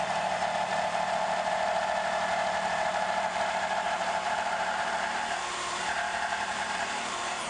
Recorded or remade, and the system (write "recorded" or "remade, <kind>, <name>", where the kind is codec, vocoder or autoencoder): remade, vocoder, BigVGAN v2